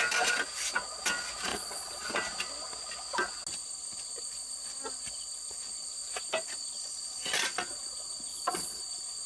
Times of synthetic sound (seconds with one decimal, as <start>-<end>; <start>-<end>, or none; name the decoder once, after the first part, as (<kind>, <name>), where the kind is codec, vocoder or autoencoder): 1.5-2.1 (vocoder, Vocos); 8.3-8.8